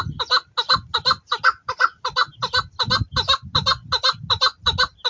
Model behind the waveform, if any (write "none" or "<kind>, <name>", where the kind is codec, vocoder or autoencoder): none